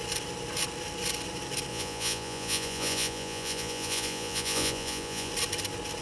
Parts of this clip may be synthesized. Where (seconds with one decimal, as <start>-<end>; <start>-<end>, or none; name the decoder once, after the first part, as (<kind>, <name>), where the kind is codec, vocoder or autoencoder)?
1.7-5.3 (vocoder, Vocos)